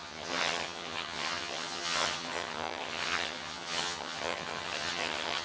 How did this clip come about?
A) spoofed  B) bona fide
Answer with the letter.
A